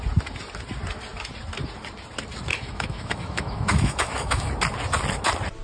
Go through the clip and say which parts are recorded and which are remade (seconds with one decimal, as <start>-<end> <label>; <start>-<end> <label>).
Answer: 0.0-2.5 recorded; 2.5-4.5 remade; 4.5-5.6 recorded